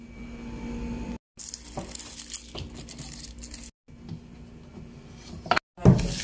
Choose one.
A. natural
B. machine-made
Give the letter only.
A